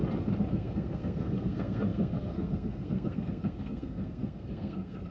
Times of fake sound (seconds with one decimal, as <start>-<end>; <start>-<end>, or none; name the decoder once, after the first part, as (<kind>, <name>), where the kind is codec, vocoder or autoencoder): 0.5-5.1 (codec, SNAC)